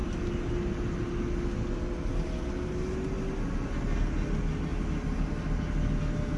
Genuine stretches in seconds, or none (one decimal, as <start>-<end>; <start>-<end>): 0.0-6.4